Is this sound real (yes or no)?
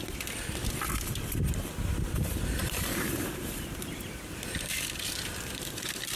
no